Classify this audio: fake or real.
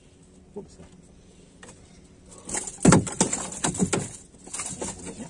real